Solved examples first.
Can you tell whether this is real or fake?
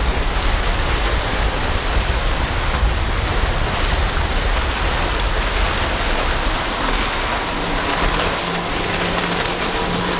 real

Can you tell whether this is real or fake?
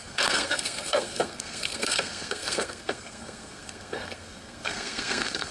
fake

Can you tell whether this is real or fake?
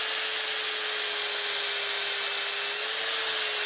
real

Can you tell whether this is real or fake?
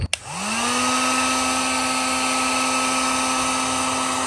real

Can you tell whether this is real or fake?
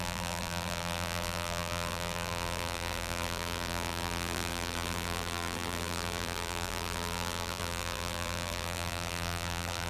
fake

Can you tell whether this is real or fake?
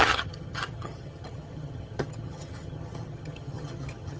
fake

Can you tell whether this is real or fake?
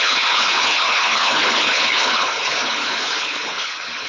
fake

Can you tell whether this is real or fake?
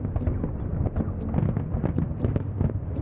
real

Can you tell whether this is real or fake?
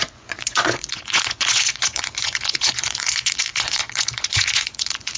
fake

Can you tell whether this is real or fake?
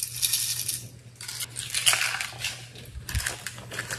real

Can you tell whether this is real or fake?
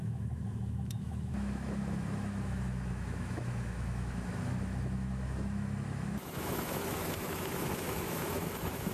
fake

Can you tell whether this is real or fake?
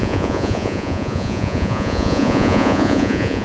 fake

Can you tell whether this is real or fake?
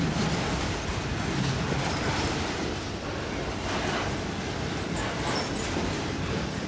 real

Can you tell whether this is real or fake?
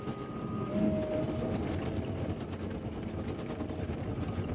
real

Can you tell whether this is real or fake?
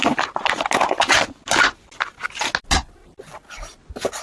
real